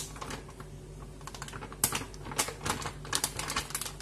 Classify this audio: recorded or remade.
recorded